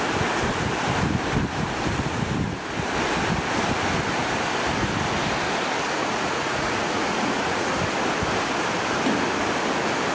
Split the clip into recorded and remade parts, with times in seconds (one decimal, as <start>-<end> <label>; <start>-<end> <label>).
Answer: 0.0-6.0 recorded; 6.0-7.7 remade; 7.7-10.1 recorded